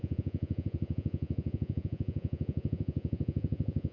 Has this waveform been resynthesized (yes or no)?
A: yes